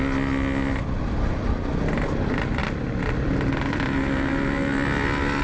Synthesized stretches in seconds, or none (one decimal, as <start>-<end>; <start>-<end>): none

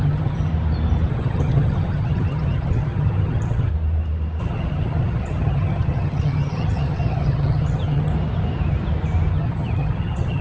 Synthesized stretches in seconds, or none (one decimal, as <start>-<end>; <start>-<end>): 0.0-0.5; 1.1-3.7; 4.4-8.1; 9.3-10.4

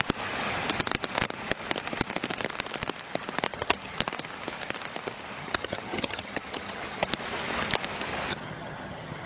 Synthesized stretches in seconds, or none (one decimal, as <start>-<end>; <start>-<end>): 3.5-4.0; 5.4-7.1; 8.3-9.3

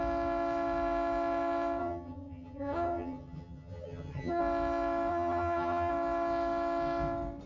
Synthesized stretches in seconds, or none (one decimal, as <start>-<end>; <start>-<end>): 1.8-4.4; 5.1-5.9

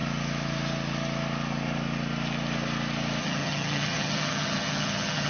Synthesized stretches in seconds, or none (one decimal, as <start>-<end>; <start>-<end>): 3.2-5.3

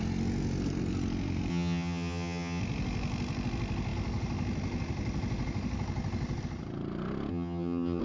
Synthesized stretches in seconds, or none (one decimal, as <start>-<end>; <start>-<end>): 1.5-2.6; 7.3-8.0

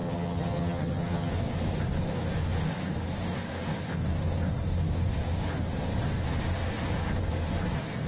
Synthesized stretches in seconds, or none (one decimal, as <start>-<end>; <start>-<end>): 0.0-1.3

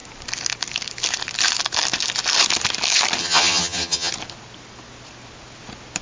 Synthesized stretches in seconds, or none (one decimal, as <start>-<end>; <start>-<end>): 3.2-4.1